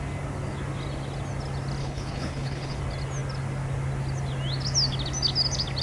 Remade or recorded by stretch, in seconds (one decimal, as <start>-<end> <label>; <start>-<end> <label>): 0.0-1.8 recorded; 1.8-2.8 remade; 2.8-5.8 recorded

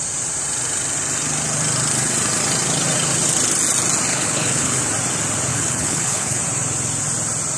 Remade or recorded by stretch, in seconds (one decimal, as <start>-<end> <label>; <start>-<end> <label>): 0.0-4.1 recorded; 4.1-4.8 remade; 4.8-5.5 recorded; 5.5-6.4 remade; 6.4-7.6 recorded

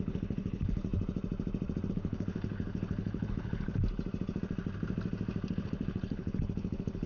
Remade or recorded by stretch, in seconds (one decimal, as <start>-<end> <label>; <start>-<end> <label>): 0.0-0.9 remade; 0.9-1.9 recorded; 1.9-3.8 remade; 3.8-5.5 recorded; 5.5-7.1 remade